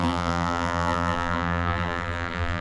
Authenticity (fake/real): fake